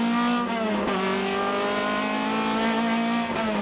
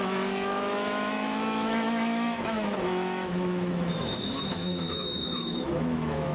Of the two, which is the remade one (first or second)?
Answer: second